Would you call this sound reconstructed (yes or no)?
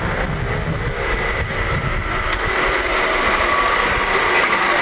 no